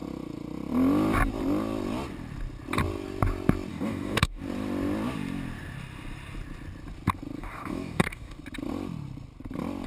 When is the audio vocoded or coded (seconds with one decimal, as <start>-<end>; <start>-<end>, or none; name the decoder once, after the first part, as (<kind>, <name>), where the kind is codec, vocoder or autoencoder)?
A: 3.7-4.4 (codec, DAC); 7.4-8.4